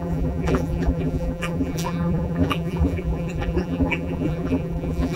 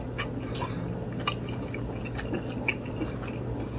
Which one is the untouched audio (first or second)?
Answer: second